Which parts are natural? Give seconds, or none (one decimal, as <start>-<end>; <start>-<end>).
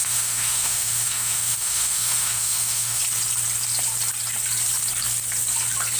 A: 3.0-6.0